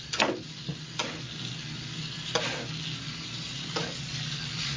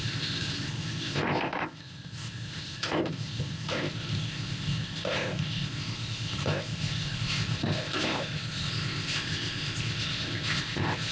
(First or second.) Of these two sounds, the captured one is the first